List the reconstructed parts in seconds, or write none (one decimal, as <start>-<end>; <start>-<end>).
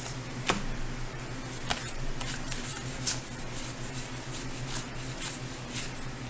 none